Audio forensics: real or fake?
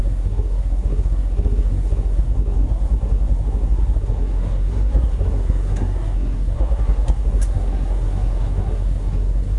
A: fake